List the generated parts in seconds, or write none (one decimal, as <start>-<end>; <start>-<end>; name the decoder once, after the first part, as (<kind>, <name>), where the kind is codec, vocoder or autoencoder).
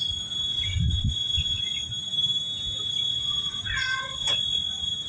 0.5-1.6 (vocoder, WaveNeXt); 3.1-4.4